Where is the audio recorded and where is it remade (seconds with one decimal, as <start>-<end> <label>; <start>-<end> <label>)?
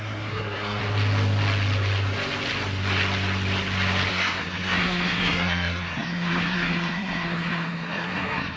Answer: 0.0-0.8 remade; 0.8-4.1 recorded; 4.1-8.6 remade